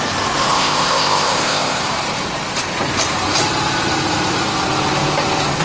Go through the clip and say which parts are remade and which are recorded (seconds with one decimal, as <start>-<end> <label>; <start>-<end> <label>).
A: 0.0-0.5 recorded; 0.5-1.8 remade; 1.8-5.6 recorded